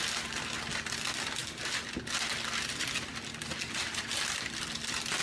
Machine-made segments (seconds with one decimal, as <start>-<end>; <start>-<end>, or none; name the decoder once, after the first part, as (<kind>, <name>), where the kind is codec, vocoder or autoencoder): none